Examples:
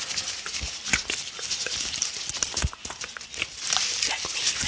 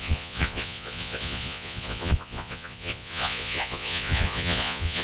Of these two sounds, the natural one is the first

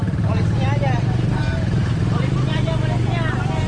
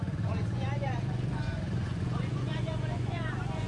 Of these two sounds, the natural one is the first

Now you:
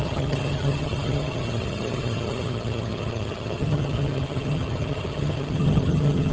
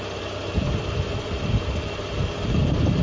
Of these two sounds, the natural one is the second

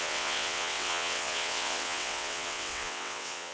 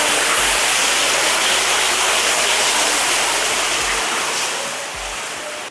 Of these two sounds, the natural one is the second